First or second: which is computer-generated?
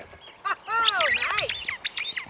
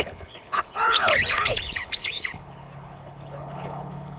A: second